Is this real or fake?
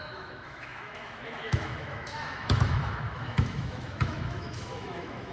fake